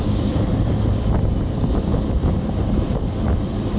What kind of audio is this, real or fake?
fake